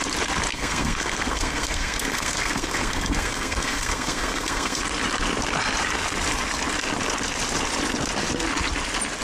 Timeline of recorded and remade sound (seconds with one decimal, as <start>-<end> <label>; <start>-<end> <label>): 0.0-0.5 recorded; 0.5-4.8 remade; 4.8-9.2 recorded